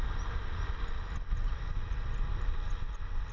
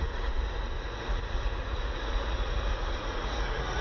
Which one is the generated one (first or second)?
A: second